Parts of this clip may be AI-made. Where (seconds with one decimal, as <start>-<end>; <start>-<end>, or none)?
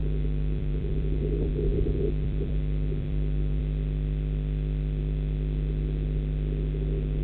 0.0-1.2; 1.7-3.6